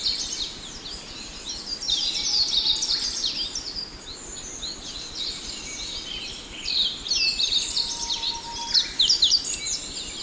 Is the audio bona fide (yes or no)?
yes